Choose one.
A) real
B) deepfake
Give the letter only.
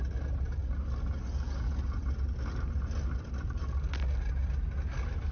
A